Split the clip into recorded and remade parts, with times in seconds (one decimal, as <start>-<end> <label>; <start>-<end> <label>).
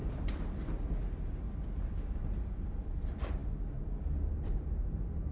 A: 0.0-5.3 recorded